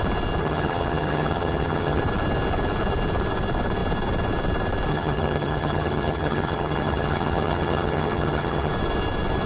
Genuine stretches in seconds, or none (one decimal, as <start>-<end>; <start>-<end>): 0.0-0.4; 2.0-4.9; 8.7-9.5